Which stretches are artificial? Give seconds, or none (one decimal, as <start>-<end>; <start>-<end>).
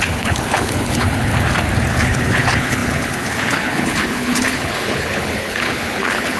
0.0-1.3; 1.9-6.4